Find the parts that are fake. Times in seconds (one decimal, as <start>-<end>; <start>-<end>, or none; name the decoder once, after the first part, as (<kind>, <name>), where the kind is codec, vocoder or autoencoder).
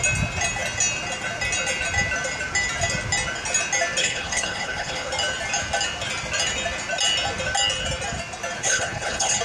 4.0-5.1 (codec, HILCodec); 8.6-9.4